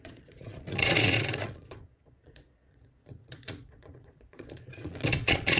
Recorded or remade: remade